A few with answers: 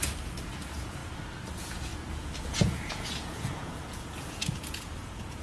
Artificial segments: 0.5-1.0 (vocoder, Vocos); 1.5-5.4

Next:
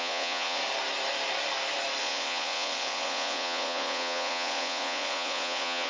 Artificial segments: 0.0-0.6 (vocoder, Vocos); 2.0-5.9

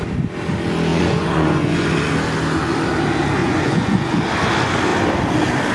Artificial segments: 0.9-2.1 (vocoder, Vocos); 3.4-4.2

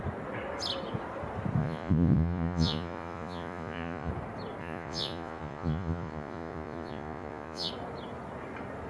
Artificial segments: 1.6-4.1 (vocoder, Vocos); 4.6-7.7

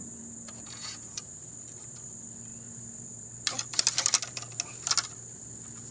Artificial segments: 0.0-1.3 (vocoder, Vocos)